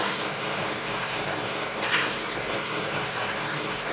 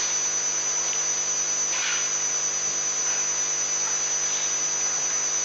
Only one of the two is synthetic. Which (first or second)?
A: first